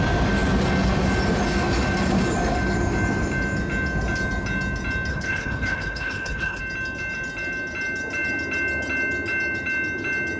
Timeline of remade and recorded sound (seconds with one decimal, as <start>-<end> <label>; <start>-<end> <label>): 0.0-5.1 recorded; 5.1-6.6 remade; 6.6-10.4 recorded